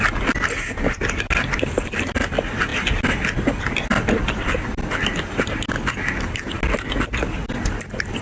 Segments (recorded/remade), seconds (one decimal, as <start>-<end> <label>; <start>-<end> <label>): 0.0-8.2 recorded